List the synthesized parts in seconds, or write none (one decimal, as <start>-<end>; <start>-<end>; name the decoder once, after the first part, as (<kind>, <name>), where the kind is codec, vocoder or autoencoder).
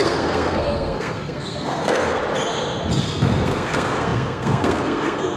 0.0-2.2 (codec, SNAC); 3.0-5.4